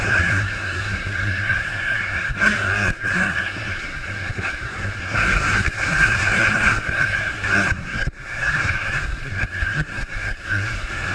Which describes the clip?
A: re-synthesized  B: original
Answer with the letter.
A